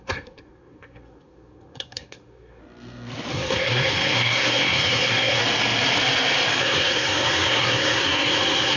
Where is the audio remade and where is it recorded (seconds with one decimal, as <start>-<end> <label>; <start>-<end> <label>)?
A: 0.0-2.6 remade; 2.6-3.3 recorded; 3.3-5.4 remade; 5.4-6.6 recorded; 6.6-8.8 remade